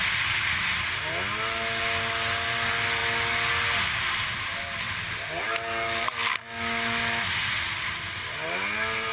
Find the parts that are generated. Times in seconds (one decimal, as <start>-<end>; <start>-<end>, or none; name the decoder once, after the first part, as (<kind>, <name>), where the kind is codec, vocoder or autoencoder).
none